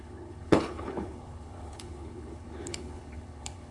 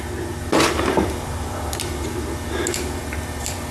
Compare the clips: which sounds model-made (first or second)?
first